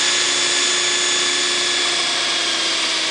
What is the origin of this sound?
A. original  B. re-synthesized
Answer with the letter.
A